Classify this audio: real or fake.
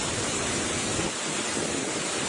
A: real